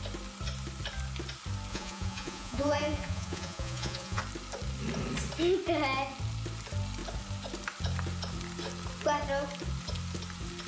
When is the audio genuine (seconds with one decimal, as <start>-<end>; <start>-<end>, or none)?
0.0-1.7; 4.2-10.7